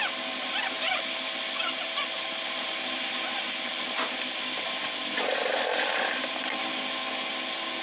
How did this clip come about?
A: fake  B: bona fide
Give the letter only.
B